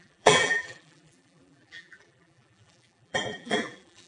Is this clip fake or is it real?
fake